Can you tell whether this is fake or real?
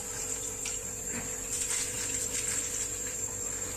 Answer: fake